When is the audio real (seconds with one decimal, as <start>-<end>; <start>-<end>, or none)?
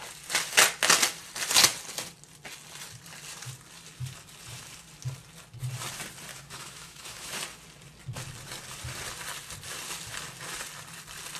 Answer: 0.0-6.3; 7.3-11.4